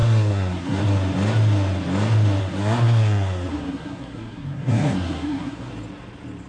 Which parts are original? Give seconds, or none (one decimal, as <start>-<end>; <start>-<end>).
0.8-2.4; 5.7-6.5